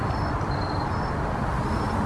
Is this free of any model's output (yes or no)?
yes